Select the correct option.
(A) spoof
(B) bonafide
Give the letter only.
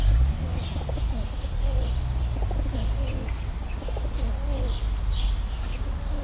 B